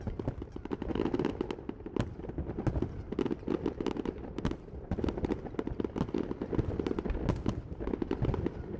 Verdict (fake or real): real